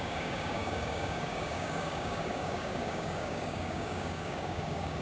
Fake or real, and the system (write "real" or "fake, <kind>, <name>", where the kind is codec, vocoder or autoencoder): fake, codec, DAC